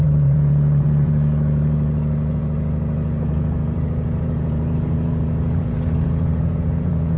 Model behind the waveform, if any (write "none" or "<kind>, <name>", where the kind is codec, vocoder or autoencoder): vocoder, Vocos